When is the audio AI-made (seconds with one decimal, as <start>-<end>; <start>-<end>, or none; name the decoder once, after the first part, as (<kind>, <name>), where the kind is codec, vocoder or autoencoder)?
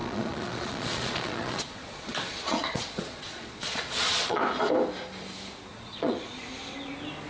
0.0-4.4 (vocoder, Vocos); 5.7-6.3